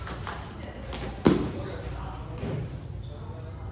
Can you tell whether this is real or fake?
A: real